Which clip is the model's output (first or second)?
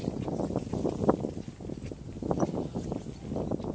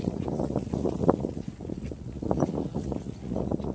second